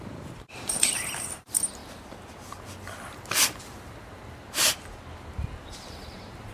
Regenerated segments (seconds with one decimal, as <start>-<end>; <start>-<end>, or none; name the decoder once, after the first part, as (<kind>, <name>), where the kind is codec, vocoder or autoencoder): 0.0-1.8 (vocoder, BigVGAN v2); 5.7-6.5